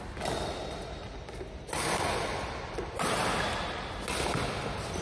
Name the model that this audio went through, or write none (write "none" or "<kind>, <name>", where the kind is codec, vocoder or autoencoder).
none